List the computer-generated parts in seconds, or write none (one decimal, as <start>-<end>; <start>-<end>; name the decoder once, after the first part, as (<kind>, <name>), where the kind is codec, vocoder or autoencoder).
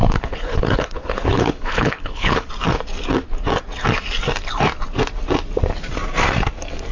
0.0-2.5 (codec, HILCodec)